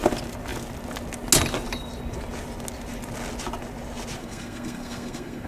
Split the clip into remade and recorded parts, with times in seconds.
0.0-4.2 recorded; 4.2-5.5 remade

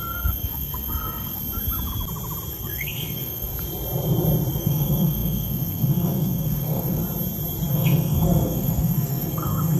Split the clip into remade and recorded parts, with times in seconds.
0.0-1.4 remade; 1.4-2.5 recorded; 2.5-3.5 remade; 3.5-4.6 recorded; 4.6-7.0 remade; 7.0-7.7 recorded; 7.7-9.8 remade

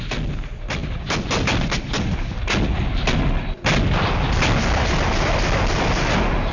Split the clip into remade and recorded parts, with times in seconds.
0.0-6.5 recorded

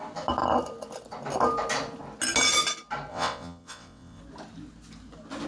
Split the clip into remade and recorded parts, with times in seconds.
0.0-3.1 recorded; 3.1-4.2 remade; 4.2-5.5 recorded

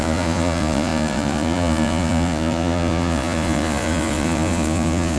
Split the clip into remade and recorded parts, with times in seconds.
0.0-5.2 remade

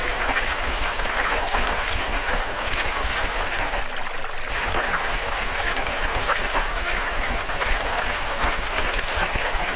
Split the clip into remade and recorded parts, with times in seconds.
0.0-3.8 remade; 3.8-4.5 recorded; 4.5-9.8 remade

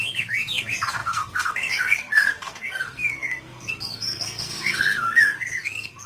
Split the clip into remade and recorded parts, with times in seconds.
0.0-6.1 remade

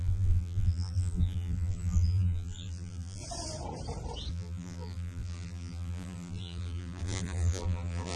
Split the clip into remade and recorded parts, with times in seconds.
0.0-3.2 remade; 3.2-4.3 recorded; 4.3-8.2 remade